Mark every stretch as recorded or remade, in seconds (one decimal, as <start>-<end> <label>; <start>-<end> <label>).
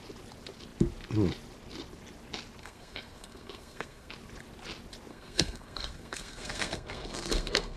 0.0-2.6 recorded; 2.6-4.1 remade; 4.1-5.1 recorded; 5.1-7.8 remade